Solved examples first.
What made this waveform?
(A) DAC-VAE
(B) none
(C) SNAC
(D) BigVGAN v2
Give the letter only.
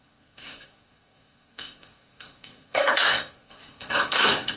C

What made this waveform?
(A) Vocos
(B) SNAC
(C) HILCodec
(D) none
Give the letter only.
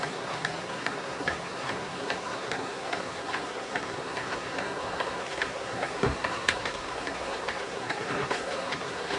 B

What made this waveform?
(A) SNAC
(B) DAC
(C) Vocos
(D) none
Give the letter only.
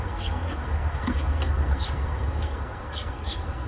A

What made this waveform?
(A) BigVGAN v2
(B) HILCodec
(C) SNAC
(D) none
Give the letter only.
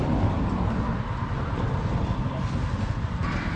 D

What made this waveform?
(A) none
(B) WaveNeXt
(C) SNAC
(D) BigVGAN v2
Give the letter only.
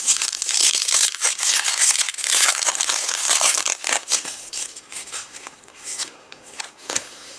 C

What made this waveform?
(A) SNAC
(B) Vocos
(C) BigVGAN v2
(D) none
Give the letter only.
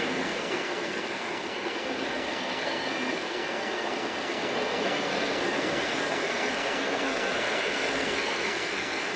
A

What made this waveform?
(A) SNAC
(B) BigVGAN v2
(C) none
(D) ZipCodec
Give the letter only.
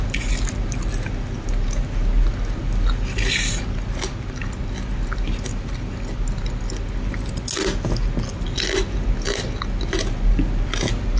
C